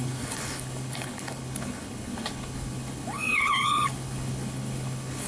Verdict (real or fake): fake